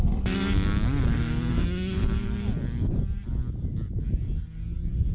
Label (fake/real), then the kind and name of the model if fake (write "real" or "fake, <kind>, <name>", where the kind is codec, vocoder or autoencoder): real